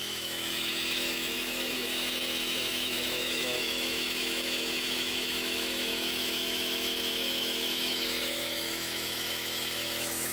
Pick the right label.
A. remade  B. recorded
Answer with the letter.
A